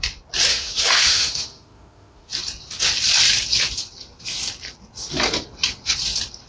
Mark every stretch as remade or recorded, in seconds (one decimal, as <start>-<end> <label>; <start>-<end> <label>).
0.0-0.5 recorded; 0.5-2.3 remade; 2.3-6.5 recorded